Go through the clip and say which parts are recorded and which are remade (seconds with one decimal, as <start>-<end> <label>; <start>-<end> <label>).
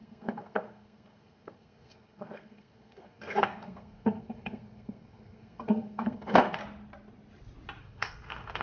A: 0.0-6.6 remade; 6.6-7.8 recorded; 7.8-8.6 remade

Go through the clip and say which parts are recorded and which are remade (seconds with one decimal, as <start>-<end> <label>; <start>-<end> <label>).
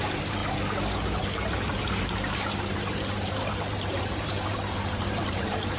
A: 0.0-0.4 remade; 0.4-2.6 recorded; 2.6-5.8 remade